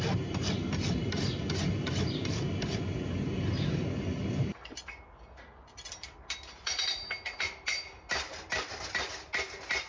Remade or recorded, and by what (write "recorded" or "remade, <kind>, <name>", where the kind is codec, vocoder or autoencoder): recorded